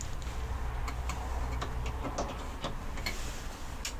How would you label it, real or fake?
real